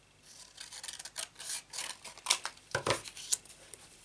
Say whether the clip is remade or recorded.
recorded